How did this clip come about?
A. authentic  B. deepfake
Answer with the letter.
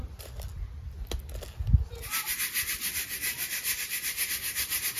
A